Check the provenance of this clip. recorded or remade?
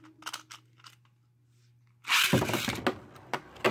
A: recorded